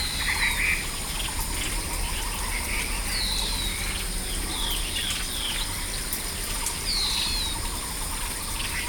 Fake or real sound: real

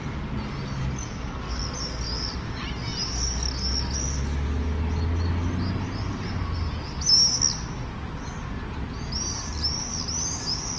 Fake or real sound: real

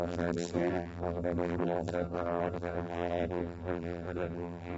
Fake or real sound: fake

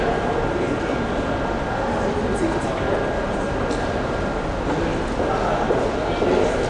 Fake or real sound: real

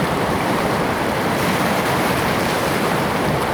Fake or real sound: fake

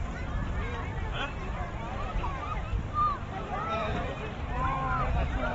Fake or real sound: fake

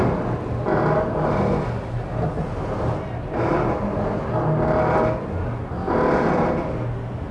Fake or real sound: real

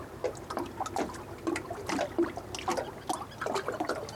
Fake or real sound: real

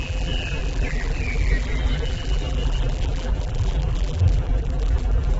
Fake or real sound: fake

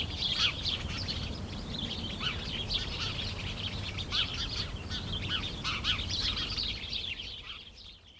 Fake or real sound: fake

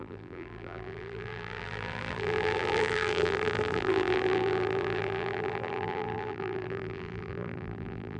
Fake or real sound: fake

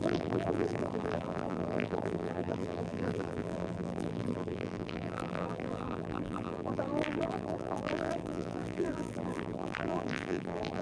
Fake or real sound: fake